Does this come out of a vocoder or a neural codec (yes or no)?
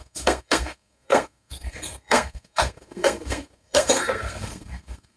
yes